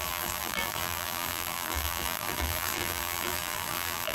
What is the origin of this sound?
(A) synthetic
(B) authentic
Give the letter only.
A